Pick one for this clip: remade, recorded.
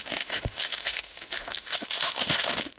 remade